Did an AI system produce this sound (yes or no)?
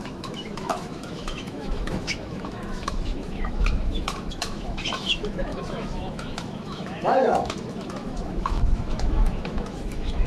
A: yes